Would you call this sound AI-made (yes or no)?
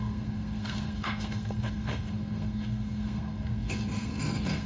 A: yes